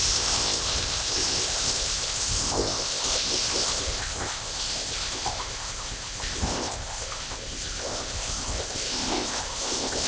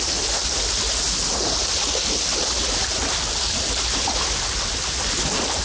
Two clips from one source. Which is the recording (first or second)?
second